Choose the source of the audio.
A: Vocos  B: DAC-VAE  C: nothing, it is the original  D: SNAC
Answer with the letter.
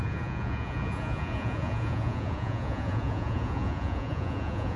A